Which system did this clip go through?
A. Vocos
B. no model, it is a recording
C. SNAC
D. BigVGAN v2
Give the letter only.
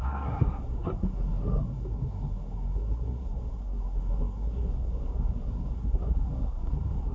C